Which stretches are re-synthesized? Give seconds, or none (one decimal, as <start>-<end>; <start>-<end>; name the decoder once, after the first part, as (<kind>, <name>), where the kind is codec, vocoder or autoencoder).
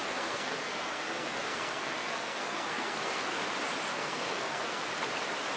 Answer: 0.0-3.4 (codec, SNAC); 3.9-4.9